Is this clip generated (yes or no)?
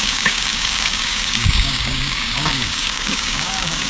yes